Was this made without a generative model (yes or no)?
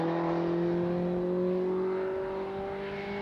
yes